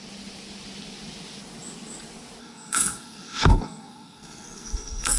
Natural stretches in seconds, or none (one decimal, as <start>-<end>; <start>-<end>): 0.0-2.4